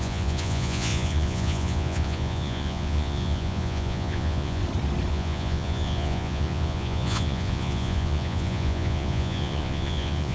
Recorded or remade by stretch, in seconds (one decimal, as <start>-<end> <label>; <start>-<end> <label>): 0.0-4.6 remade; 4.6-5.1 recorded; 5.1-10.3 remade